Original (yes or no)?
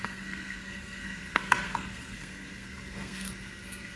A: no